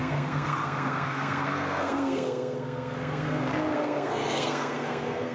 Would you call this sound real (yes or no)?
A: no